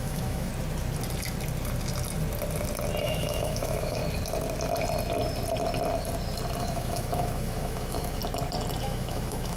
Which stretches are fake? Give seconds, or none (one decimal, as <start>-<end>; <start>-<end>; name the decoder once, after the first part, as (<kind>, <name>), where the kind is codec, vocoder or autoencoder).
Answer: 0.0-0.5 (autoencoder, DAC-VAE); 3.0-4.0; 6.6-8.2; 8.8-9.6